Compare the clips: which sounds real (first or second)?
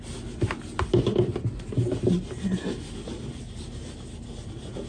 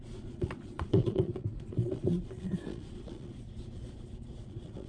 first